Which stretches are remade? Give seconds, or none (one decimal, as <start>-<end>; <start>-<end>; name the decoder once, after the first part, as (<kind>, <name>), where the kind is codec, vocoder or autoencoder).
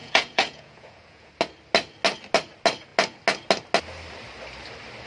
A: 0.0-1.3 (vocoder, Vocos)